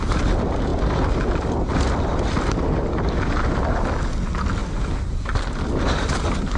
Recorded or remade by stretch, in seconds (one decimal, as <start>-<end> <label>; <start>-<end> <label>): 0.0-6.6 recorded